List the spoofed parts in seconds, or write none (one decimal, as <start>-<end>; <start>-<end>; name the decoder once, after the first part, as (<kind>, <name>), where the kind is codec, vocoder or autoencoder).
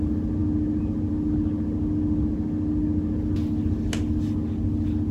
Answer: none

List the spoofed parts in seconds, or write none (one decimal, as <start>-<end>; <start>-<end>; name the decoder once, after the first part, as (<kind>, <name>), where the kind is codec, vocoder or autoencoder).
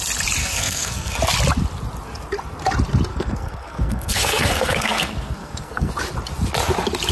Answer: 0.4-1.2 (codec, SNAC); 3.1-5.9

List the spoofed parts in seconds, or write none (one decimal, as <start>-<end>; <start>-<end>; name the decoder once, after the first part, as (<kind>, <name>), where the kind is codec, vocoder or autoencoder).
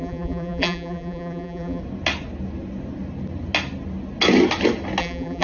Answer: 0.0-1.8 (vocoder, BigVGAN v2); 5.0-5.4